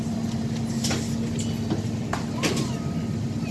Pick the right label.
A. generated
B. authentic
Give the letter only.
B